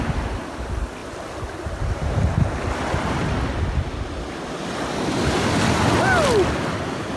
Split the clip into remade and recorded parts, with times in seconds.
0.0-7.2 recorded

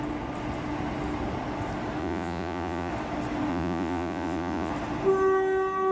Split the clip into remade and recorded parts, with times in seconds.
0.0-2.0 recorded; 2.0-2.9 remade; 2.9-3.5 recorded; 3.5-4.7 remade; 4.7-5.9 recorded

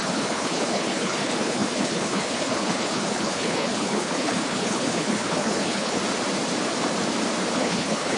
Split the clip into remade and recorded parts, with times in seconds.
0.0-6.0 remade; 6.0-7.5 recorded; 7.5-8.2 remade

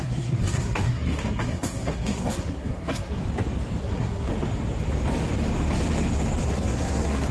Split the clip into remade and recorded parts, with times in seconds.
0.0-3.2 remade; 3.2-3.8 recorded; 3.8-4.3 remade; 4.3-6.4 recorded; 6.4-7.3 remade